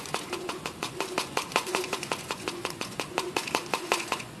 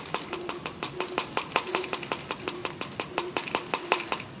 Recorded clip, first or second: second